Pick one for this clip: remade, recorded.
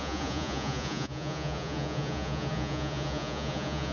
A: remade